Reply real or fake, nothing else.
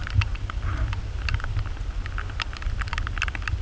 real